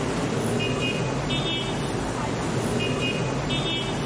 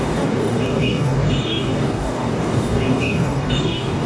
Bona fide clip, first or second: first